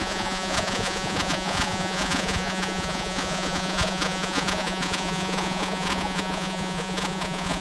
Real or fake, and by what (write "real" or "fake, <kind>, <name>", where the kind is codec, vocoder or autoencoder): fake, vocoder, Vocos